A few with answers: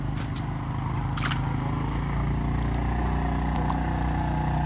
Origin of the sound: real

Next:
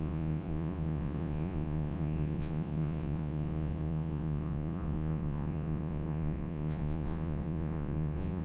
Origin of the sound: fake